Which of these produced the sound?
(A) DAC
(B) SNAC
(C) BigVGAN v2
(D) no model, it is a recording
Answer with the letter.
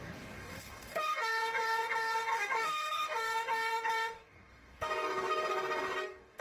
A